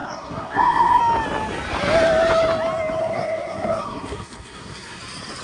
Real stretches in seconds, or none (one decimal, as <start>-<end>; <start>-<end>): 1.0-3.0; 5.0-5.4